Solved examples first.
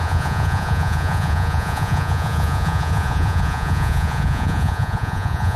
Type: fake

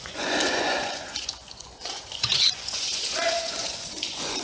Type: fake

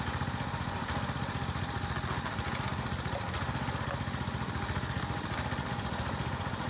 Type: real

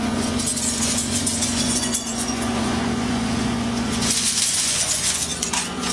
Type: fake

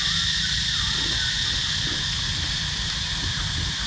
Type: real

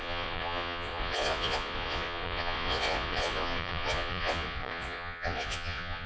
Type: fake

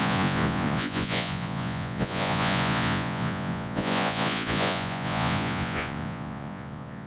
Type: fake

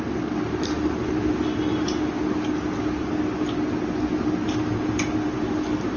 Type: real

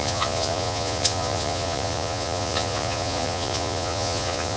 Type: fake